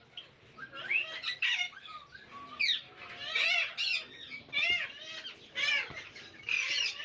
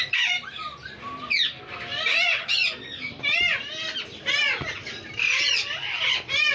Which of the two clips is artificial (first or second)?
second